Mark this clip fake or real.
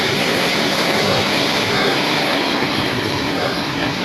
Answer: fake